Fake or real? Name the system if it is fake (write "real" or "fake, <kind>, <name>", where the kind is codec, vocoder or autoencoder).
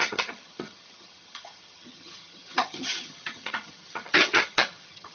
fake, vocoder, HiFi-GAN